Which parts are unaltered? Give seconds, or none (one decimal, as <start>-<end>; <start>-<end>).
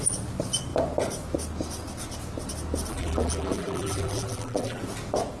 0.0-2.9; 4.8-5.4